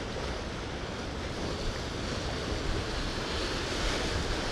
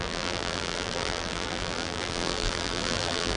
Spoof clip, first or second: second